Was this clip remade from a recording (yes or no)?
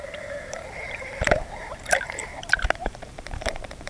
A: yes